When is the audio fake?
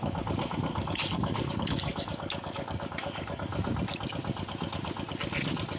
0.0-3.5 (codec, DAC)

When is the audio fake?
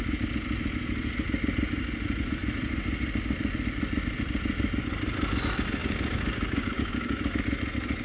5.8-7.4 (codec, DAC)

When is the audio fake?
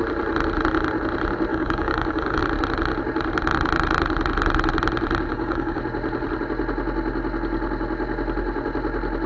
1.5-2.4 (codec, DAC); 5.3-5.8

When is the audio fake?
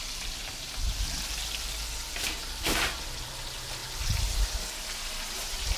none